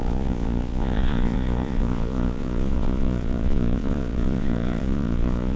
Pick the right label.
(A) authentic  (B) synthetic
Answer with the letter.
B